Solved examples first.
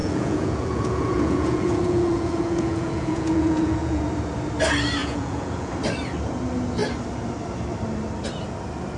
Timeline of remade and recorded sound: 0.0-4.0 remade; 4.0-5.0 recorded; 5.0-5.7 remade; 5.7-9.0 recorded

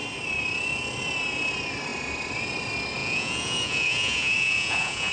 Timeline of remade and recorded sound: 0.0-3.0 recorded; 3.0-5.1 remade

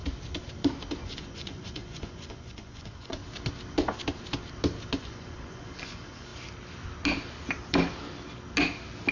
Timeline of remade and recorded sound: 0.0-1.0 recorded; 1.0-3.2 remade; 3.2-5.0 recorded; 5.0-6.3 remade; 6.3-9.1 recorded

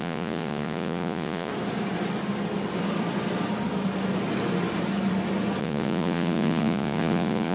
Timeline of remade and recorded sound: 0.0-1.5 remade; 1.5-5.6 recorded; 5.6-7.5 remade

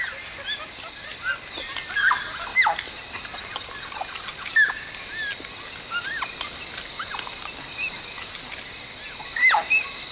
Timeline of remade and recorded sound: 0.0-10.1 recorded

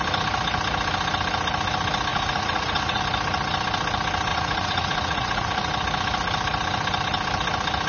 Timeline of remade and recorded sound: 0.0-2.1 recorded; 2.1-3.0 remade; 3.0-4.3 recorded; 4.3-5.7 remade; 5.7-7.9 recorded

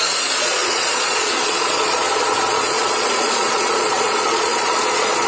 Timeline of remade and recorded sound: 0.0-5.3 remade

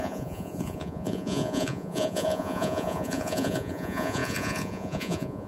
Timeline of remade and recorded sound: 0.0-5.5 remade